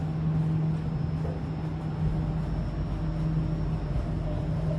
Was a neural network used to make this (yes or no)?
no